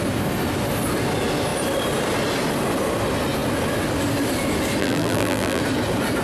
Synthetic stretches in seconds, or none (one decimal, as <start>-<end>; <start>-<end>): 4.8-5.6